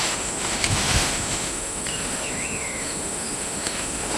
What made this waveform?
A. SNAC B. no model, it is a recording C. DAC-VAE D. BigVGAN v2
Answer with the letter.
C